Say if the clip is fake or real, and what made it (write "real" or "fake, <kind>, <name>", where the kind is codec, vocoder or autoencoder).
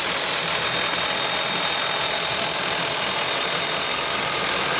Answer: real